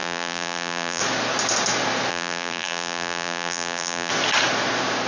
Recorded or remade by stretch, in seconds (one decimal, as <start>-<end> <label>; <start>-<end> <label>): 0.0-1.0 remade; 1.0-2.1 recorded; 2.1-4.1 remade; 4.1-5.1 recorded